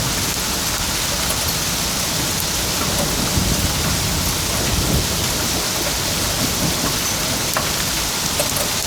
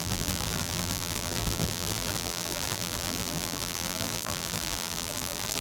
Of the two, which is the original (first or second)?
first